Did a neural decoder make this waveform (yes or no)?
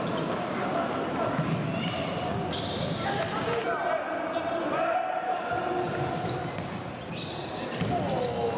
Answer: no